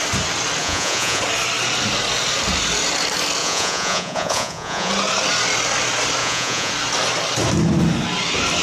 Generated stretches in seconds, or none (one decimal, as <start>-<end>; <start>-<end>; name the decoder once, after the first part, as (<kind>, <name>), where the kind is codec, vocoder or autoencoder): 0.6-1.2 (vocoder, Vocos); 3.4-4.9; 6.2-6.7